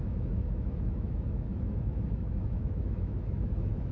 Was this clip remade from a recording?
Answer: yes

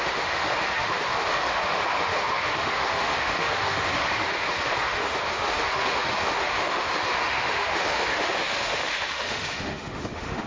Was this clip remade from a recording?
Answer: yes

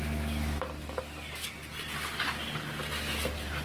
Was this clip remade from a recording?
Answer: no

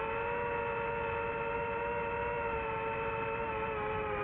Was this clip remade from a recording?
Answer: no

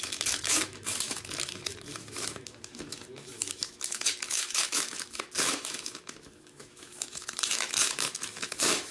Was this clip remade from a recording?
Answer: yes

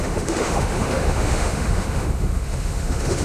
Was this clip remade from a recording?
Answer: yes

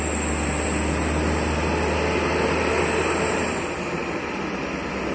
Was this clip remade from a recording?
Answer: no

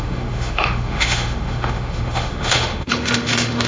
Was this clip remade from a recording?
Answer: yes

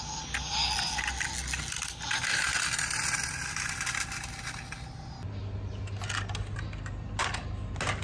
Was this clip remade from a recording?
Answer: no